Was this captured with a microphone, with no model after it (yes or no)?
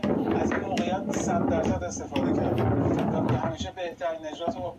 no